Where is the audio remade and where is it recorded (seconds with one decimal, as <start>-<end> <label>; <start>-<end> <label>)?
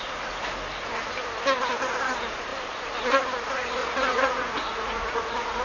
0.0-3.8 recorded; 3.8-5.6 remade